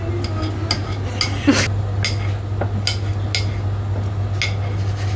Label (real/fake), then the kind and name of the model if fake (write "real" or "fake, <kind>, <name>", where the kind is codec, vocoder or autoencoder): real